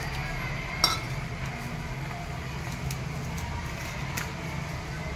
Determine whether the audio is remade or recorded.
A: recorded